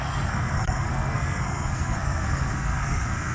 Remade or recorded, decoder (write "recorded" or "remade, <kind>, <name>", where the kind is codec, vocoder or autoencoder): remade, codec, SNAC